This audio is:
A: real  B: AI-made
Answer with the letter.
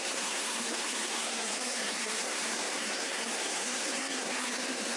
B